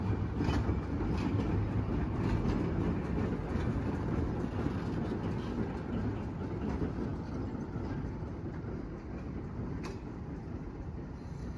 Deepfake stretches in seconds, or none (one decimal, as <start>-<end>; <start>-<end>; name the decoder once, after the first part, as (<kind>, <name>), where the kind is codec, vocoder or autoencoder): none